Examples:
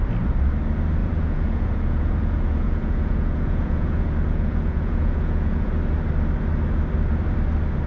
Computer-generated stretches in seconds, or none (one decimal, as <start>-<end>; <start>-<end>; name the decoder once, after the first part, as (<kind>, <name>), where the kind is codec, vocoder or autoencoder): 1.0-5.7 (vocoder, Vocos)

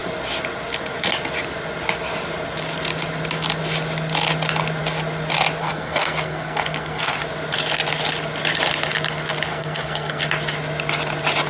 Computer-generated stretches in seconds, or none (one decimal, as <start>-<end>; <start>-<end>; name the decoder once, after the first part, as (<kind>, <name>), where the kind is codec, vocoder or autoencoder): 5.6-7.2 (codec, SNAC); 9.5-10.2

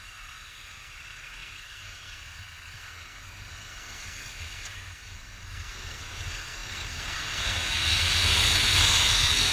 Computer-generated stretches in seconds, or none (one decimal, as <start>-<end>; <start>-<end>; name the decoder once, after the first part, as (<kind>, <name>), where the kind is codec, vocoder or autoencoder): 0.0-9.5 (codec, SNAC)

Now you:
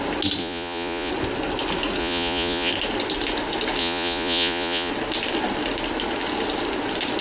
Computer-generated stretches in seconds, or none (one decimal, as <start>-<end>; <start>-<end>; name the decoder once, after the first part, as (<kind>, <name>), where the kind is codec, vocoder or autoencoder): 0.4-1.1 (vocoder, Vocos); 2.0-2.7; 3.8-4.9

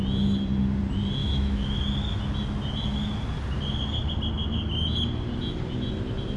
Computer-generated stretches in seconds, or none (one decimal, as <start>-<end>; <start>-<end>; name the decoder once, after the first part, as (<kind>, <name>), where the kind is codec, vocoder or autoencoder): 1.2-1.8 (autoencoder, DAC-VAE)

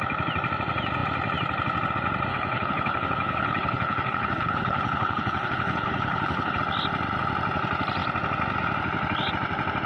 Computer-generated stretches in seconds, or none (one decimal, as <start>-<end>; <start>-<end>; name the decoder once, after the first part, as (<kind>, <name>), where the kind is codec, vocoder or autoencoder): 2.3-6.6 (codec, HILCodec)

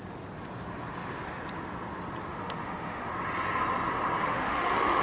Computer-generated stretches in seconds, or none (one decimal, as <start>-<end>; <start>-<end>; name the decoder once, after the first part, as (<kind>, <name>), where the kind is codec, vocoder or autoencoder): 2.3-3.1 (autoencoder, DAC-VAE); 4.2-5.0

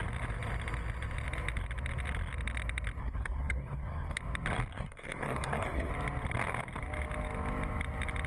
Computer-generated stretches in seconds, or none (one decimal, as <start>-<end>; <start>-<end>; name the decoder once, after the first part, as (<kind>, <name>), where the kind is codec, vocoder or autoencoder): 3.0-4.2 (codec, SNAC); 4.7-5.9